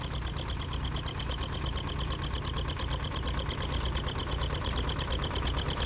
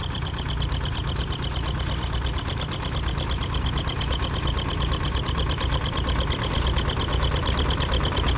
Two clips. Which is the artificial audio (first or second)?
second